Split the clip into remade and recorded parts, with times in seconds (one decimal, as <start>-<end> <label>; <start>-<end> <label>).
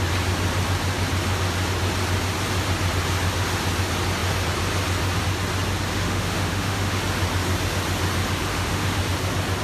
0.0-5.9 recorded; 5.9-7.0 remade; 7.0-8.5 recorded; 8.5-9.0 remade; 9.0-9.6 recorded